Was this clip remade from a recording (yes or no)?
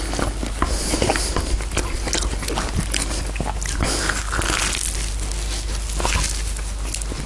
no